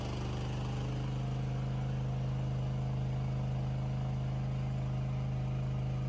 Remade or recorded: recorded